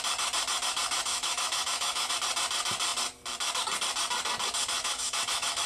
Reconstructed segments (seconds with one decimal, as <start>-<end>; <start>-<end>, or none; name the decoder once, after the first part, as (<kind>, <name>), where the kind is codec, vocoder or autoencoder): 1.1-2.1 (autoencoder, DAC-VAE); 4.8-5.7